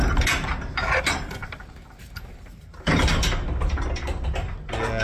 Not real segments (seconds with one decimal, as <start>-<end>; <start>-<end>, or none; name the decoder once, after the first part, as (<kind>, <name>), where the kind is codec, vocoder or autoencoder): 1.4-4.4 (vocoder, BigVGAN v2)